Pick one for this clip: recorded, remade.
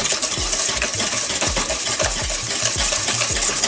recorded